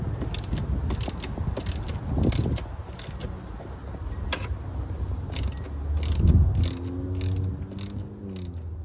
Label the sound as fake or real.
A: real